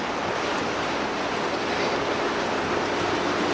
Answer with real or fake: real